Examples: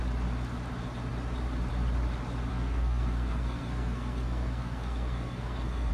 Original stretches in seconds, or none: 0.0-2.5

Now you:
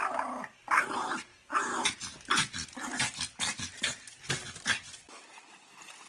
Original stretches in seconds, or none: 0.0-6.1